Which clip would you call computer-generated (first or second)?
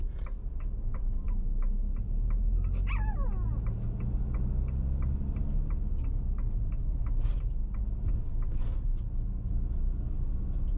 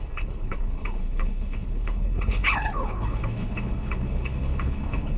second